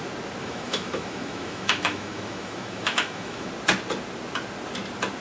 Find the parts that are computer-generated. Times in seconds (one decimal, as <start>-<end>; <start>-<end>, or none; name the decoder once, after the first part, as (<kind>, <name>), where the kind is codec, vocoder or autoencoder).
0.4-3.5 (autoencoder, DAC-VAE)